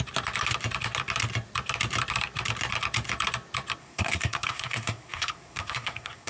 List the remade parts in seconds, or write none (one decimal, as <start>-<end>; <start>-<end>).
3.8-6.3